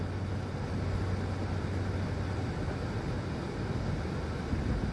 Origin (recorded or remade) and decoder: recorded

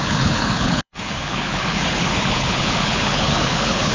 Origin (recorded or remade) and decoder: remade, codec, HILCodec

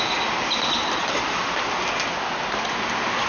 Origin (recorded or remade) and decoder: recorded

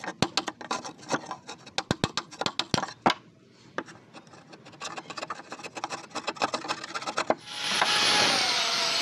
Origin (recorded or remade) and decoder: recorded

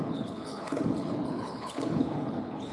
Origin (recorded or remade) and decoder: remade, codec, HILCodec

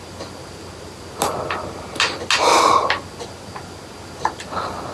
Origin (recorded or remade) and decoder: recorded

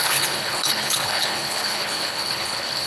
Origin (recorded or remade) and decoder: remade, codec, HILCodec